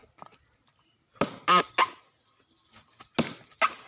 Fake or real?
real